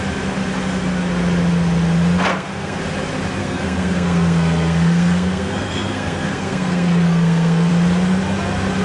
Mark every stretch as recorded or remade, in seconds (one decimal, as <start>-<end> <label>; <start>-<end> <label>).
0.0-2.3 recorded; 2.3-2.8 remade; 2.8-3.4 recorded; 3.4-7.7 remade; 7.7-8.8 recorded